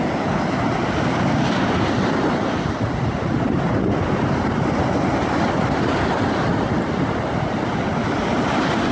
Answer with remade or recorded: recorded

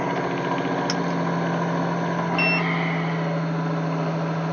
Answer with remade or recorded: recorded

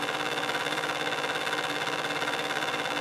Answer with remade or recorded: remade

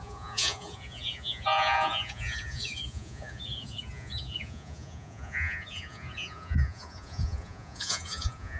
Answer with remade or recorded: remade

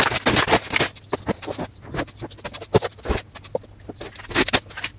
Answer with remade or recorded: recorded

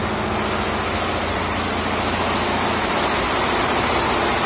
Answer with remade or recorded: recorded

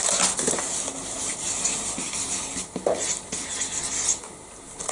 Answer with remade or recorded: recorded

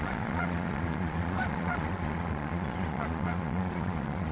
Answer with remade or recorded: remade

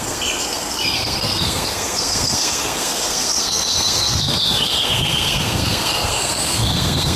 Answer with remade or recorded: remade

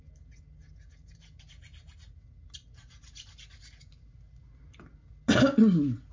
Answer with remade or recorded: recorded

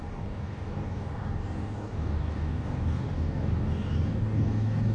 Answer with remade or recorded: remade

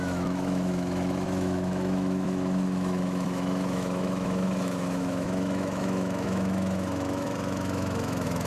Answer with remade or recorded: remade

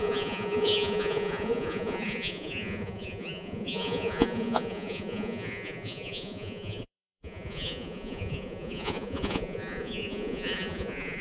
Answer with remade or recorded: remade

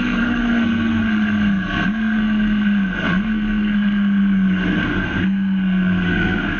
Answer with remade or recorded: remade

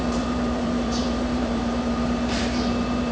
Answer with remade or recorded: remade